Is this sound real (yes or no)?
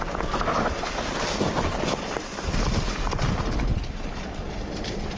yes